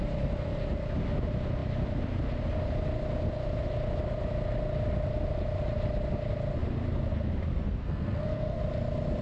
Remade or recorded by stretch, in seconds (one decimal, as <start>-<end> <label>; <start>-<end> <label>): 0.0-7.5 recorded; 7.5-8.6 remade; 8.6-9.2 recorded